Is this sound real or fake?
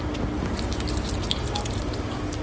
real